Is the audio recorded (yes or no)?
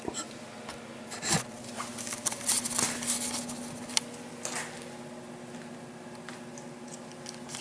yes